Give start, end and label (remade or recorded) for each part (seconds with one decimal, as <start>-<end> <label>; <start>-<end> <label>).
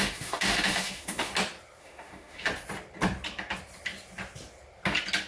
0.0-1.3 remade; 1.3-1.8 recorded; 1.8-2.5 remade; 2.5-5.3 recorded